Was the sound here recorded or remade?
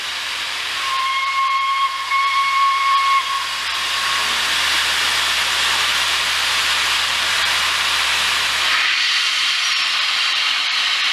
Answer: remade